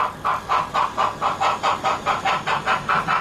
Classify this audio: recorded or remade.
recorded